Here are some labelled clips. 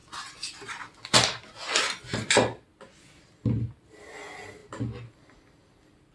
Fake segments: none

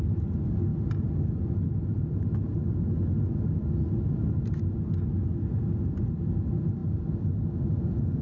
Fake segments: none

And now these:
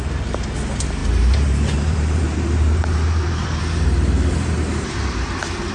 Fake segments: 1.0-3.6 (vocoder, BigVGAN v2)

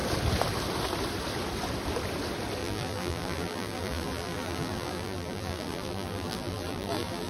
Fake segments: 2.6-7.3 (vocoder, BigVGAN v2)

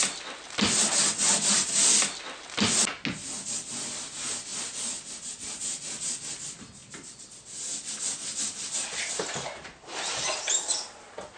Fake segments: 0.0-0.8 (vocoder, BigVGAN v2); 6.8-9.1

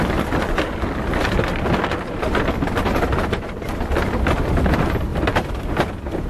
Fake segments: 2.8-3.8 (vocoder, BigVGAN v2)

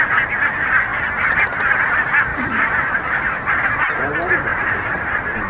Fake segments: 2.3-3.9 (vocoder, BigVGAN v2); 4.5-5.5